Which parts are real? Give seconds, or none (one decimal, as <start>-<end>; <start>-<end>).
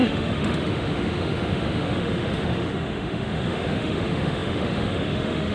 none